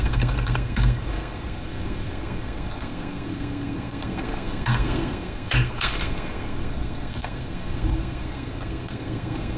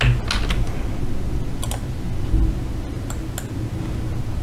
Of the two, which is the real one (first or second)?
second